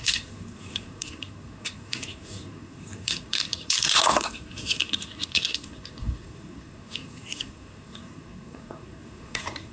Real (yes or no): no